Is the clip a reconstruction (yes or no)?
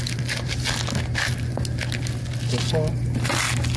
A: no